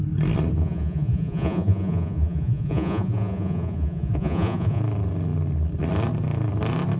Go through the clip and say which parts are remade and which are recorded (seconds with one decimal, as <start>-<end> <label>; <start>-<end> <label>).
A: 0.0-0.6 recorded; 0.6-4.8 remade; 4.8-7.0 recorded